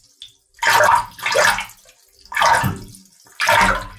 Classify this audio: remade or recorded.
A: recorded